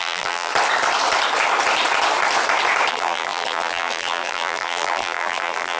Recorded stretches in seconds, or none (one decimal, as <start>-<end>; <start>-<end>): 0.5-2.9